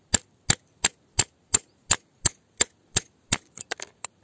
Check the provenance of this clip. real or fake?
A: real